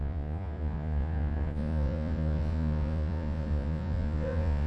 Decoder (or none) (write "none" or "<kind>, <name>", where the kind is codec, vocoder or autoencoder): vocoder, Vocos